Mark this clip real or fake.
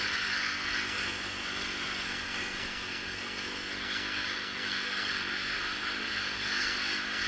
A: fake